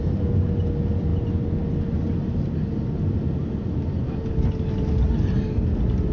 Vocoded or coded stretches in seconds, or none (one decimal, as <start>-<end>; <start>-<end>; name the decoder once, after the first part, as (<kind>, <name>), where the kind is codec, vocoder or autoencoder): none